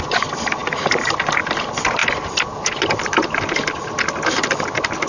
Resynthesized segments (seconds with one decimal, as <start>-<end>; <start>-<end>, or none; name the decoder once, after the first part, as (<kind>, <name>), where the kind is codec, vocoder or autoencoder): none